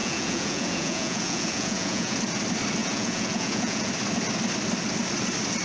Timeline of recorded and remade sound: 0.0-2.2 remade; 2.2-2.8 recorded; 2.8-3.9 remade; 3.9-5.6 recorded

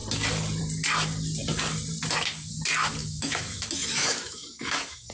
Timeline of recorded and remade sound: 0.0-3.0 recorded; 3.0-5.1 remade

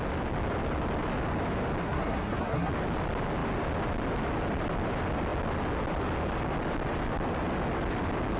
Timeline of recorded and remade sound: 0.0-1.8 recorded; 1.8-2.7 remade; 2.7-8.4 recorded

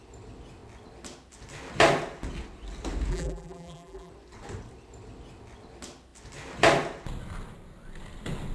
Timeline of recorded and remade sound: 0.0-3.1 recorded; 3.1-4.1 remade; 4.1-8.5 recorded